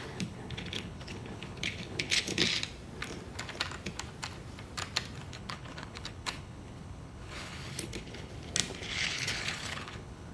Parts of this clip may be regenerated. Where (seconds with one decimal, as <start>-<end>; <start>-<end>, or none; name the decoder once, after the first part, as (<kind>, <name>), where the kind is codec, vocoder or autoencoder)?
0.0-2.4 (codec, HILCodec); 5.3-8.3; 8.9-10.3